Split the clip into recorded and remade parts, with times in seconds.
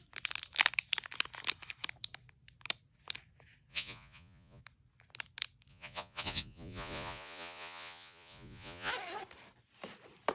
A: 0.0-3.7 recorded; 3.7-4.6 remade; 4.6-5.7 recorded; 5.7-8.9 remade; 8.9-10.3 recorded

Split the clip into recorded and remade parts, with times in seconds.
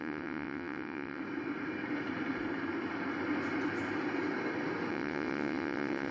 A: 0.0-1.2 remade; 1.2-4.9 recorded; 4.9-6.1 remade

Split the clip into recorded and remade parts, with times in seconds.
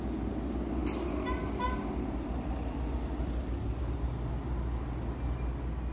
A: 0.0-5.9 recorded